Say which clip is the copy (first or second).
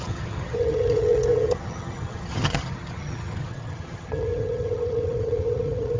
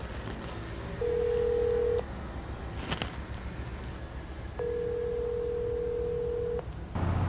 first